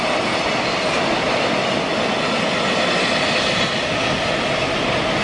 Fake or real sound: real